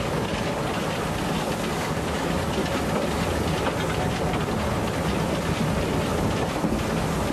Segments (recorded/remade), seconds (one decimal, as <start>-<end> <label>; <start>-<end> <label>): 0.0-0.6 remade; 0.6-1.7 recorded; 1.7-2.6 remade; 2.6-7.3 recorded